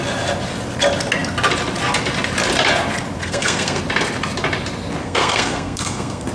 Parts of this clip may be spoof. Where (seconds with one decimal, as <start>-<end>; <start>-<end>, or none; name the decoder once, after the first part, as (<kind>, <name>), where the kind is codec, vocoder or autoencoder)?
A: 3.2-3.8 (codec, SNAC); 5.0-6.3